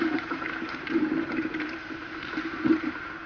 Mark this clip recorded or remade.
remade